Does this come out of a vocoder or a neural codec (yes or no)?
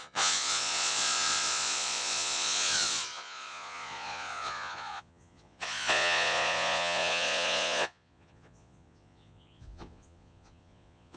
yes